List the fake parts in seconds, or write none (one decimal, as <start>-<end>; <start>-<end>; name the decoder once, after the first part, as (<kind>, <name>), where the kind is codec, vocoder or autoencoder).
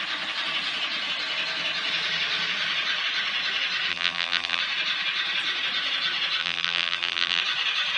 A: 3.9-4.6 (vocoder, BigVGAN v2); 6.4-7.4